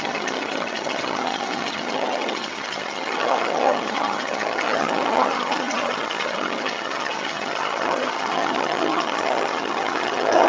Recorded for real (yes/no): no